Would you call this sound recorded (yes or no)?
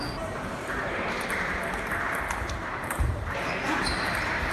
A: no